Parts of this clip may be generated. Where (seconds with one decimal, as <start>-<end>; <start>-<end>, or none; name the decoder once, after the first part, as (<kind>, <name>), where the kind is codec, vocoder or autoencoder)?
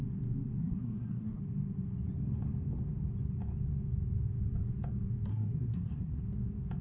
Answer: 0.6-1.4 (codec, SNAC); 5.3-6.2